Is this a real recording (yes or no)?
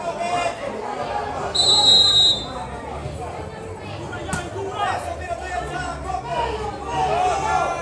yes